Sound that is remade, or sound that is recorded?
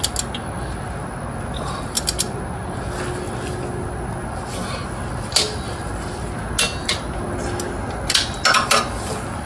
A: recorded